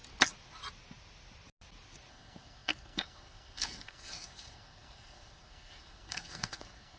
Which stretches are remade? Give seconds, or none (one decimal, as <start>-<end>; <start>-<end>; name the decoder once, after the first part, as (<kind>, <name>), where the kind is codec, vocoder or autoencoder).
2.1-7.0 (codec, SNAC)